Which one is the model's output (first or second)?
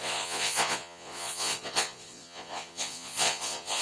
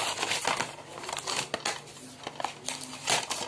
first